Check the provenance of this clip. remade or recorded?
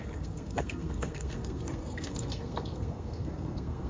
remade